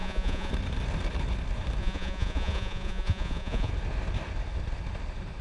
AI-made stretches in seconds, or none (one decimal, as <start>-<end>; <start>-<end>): 0.0-0.5; 1.8-3.7